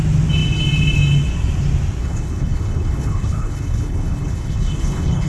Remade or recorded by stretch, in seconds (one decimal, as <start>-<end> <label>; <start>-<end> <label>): 0.0-2.0 recorded; 2.0-5.3 remade